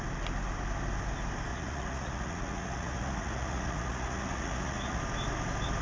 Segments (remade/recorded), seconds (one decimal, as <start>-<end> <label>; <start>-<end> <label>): 0.0-1.5 recorded; 1.5-5.0 remade; 5.0-5.8 recorded